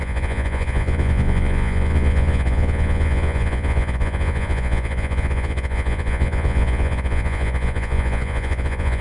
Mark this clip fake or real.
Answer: fake